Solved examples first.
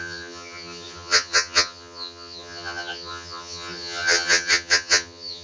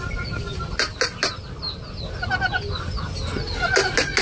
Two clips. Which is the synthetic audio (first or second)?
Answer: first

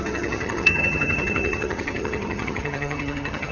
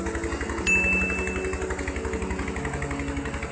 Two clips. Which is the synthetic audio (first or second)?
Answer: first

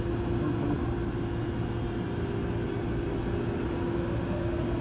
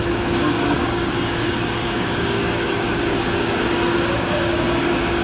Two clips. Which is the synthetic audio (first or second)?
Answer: second